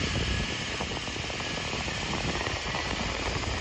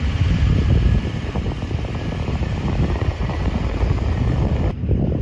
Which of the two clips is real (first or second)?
first